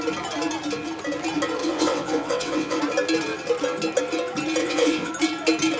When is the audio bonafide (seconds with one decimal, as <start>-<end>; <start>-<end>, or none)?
0.0-1.6; 2.8-4.6; 5.1-5.8